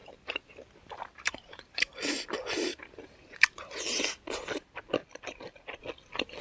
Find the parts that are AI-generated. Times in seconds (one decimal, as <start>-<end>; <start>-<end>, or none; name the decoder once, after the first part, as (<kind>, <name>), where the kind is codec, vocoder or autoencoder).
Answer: 0.0-3.8 (vocoder, BigVGAN v2)